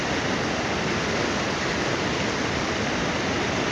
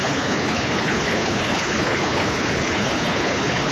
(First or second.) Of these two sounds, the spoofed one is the second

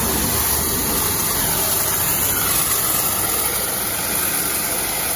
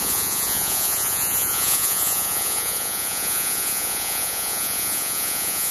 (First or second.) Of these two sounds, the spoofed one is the second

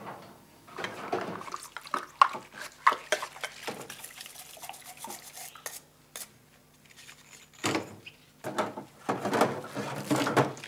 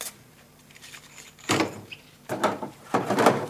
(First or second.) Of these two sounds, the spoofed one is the second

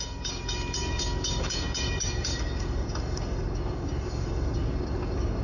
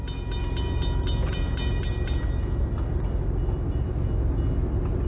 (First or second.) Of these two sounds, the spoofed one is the first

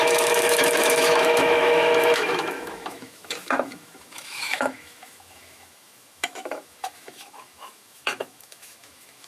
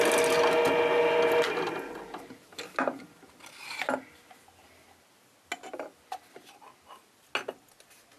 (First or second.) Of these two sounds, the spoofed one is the first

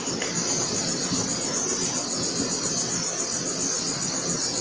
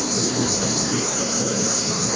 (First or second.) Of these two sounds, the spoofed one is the second